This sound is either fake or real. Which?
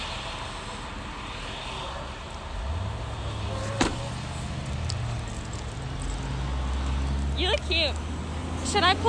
real